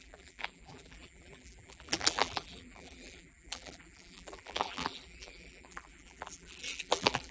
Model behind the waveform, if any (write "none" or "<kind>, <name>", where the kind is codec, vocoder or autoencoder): vocoder, BigVGAN v2